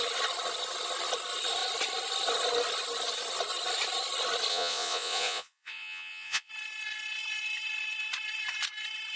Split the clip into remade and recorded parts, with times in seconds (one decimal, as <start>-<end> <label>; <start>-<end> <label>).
0.0-4.5 recorded; 4.5-6.5 remade; 6.5-9.2 recorded